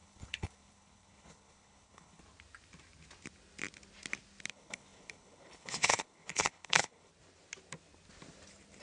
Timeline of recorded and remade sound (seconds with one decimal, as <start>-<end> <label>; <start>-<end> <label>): 0.0-2.2 remade; 2.2-4.5 recorded; 4.5-7.1 remade; 7.1-8.8 recorded